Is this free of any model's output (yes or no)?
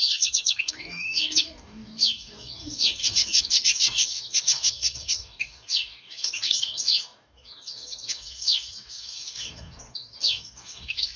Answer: no